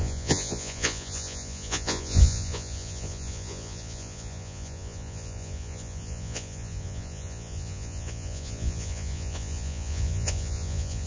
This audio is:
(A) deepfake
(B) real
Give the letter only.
A